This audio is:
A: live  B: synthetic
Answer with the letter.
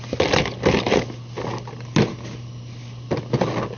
A